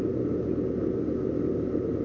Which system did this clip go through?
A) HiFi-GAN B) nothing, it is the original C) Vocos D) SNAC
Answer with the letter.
B